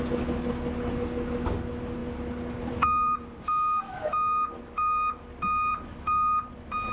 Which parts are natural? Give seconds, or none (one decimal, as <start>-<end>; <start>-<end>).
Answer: 0.0-6.9